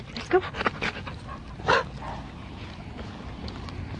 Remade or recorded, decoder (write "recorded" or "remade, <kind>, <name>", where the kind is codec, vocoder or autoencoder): recorded